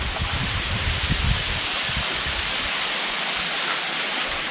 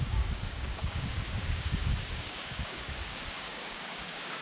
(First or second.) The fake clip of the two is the second